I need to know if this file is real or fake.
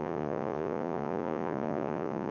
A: fake